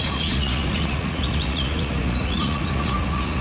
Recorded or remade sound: remade